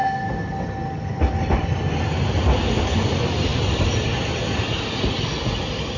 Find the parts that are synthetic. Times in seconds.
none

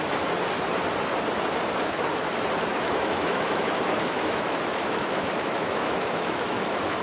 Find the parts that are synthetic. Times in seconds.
2.7-7.0 (autoencoder, DAC-VAE)

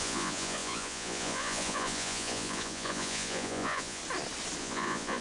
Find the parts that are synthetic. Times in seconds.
0.0-4.0 (vocoder, Vocos); 4.6-5.2

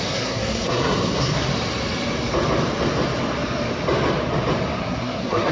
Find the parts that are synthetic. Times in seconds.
0.0-1.5 (codec, SNAC); 4.8-5.5

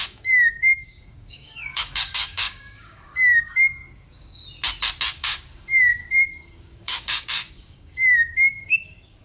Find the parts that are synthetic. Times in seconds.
0.0-4.4 (codec, DAC); 5.1-9.2

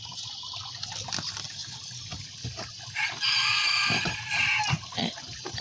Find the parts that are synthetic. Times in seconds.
none

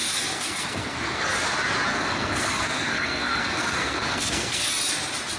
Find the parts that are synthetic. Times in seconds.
0.0-1.3 (codec, SNAC); 1.9-4.7